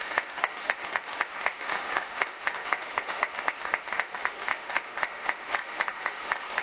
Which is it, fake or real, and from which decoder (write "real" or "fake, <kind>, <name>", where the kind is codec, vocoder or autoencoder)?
fake, autoencoder, DAC-VAE